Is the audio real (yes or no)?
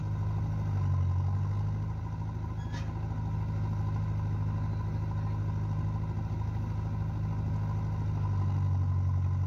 yes